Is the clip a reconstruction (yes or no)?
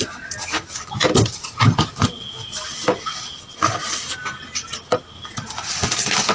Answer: no